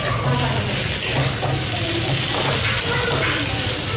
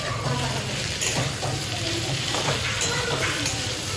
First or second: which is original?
first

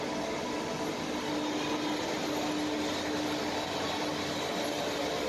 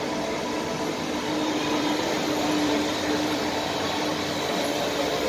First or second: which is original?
first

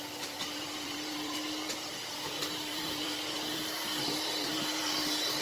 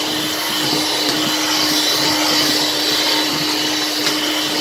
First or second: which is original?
second